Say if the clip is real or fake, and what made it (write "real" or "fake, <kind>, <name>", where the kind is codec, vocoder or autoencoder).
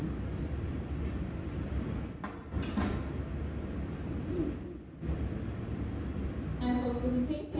real